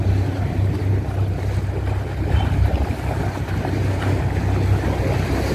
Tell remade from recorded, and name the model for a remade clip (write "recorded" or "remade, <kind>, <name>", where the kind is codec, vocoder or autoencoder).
recorded